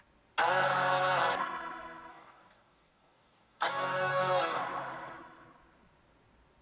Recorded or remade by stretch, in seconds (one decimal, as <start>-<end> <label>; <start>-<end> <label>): 0.0-2.1 recorded; 2.1-4.6 remade; 4.6-6.6 recorded